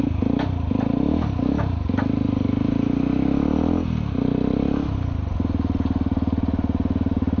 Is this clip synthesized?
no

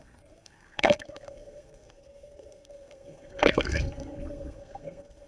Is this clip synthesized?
yes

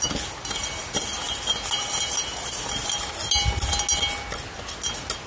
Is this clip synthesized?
no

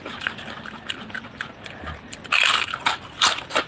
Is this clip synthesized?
no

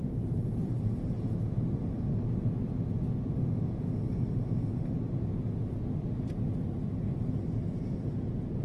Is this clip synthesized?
no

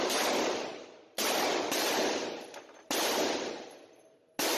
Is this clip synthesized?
no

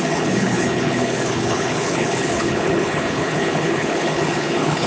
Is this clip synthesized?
yes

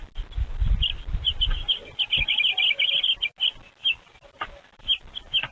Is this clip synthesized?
no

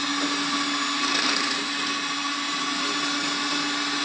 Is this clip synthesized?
no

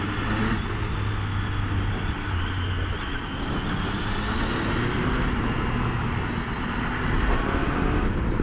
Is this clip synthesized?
no